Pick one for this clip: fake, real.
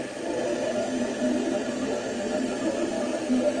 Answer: real